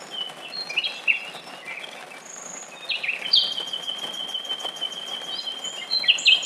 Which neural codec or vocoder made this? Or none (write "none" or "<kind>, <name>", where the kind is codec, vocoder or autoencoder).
none